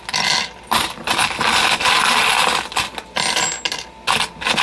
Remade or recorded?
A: recorded